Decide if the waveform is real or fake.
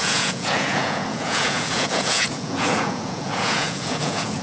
fake